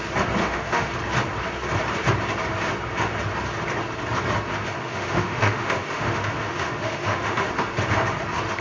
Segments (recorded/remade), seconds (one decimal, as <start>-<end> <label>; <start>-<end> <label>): 0.0-0.4 recorded; 0.4-0.9 remade; 0.9-4.8 recorded; 4.8-7.5 remade; 7.5-8.6 recorded